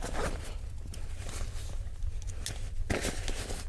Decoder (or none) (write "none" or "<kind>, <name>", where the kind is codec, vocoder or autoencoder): none